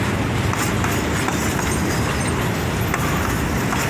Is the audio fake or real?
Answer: real